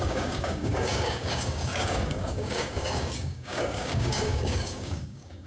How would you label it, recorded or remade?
remade